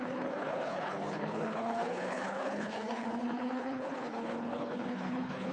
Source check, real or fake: fake